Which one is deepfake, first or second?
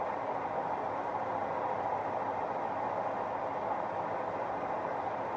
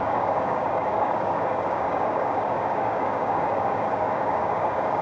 second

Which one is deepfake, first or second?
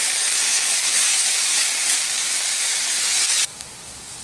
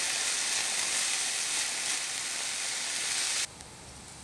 first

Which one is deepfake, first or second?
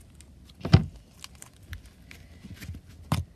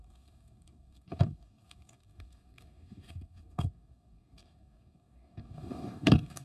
second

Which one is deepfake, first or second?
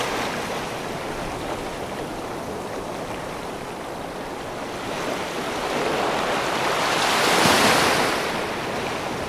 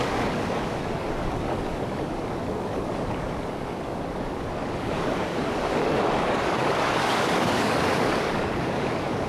second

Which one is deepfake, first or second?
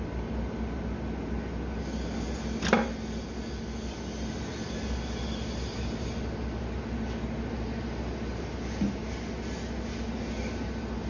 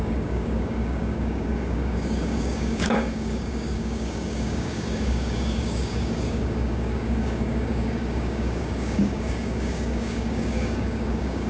second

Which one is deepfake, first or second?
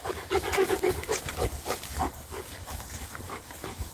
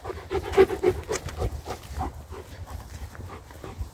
first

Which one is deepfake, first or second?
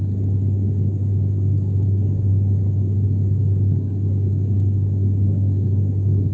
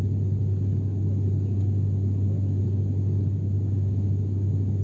first